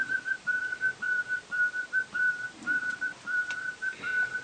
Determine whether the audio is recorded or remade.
recorded